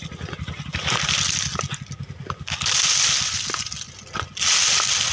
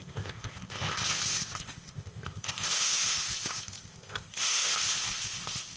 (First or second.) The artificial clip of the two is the second